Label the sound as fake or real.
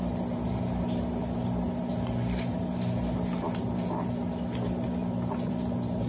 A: real